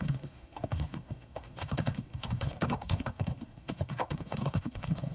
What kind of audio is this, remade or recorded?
remade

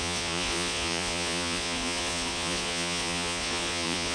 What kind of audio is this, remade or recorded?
remade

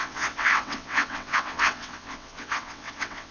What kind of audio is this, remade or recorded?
remade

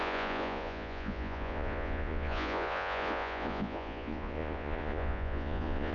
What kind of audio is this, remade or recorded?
remade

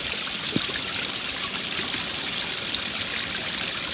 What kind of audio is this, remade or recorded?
recorded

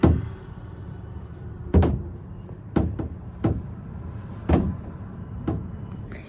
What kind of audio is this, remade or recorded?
remade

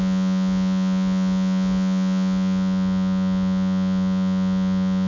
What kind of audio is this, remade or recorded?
remade